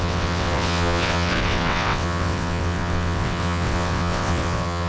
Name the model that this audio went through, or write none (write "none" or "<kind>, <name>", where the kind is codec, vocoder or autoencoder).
vocoder, WaveNeXt